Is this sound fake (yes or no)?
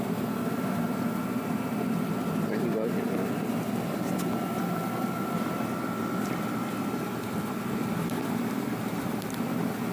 yes